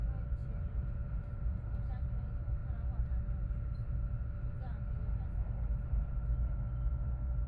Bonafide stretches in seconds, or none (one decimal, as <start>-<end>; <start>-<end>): 0.0-0.4; 1.9-7.5